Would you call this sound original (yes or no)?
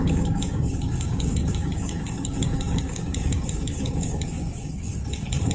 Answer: no